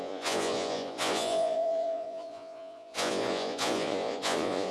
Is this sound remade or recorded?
remade